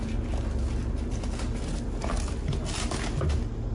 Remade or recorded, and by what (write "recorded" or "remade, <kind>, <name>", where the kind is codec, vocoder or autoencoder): recorded